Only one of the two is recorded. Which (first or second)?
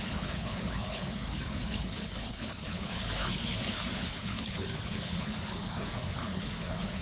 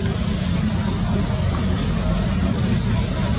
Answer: second